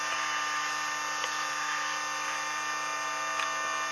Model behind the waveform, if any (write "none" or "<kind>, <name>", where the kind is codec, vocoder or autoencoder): none